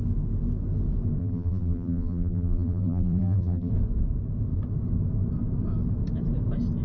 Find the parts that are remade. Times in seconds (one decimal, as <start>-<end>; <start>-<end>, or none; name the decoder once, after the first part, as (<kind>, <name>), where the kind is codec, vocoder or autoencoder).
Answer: 1.2-3.7 (vocoder, BigVGAN v2)